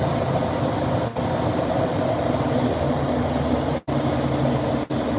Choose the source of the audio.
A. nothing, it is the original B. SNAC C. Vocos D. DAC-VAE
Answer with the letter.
A